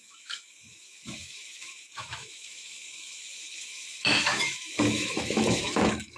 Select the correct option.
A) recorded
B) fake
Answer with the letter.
B